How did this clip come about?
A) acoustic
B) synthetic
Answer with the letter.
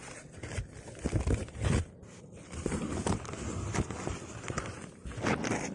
A